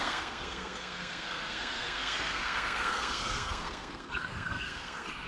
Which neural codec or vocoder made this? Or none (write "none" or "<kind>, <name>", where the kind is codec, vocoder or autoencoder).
codec, SNAC